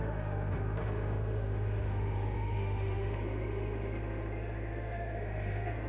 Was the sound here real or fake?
fake